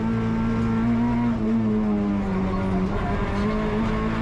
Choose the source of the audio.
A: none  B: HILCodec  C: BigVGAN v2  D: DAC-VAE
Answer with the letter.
A